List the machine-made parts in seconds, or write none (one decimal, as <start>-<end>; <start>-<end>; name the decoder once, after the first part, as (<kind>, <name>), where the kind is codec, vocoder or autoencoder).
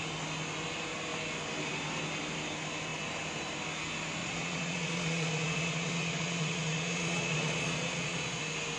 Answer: 4.2-8.4 (vocoder, Vocos)